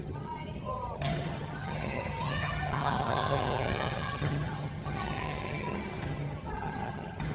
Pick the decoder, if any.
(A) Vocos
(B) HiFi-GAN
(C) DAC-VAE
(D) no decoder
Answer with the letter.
B